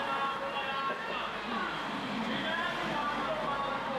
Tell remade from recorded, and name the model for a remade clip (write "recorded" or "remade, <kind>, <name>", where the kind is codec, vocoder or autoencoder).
recorded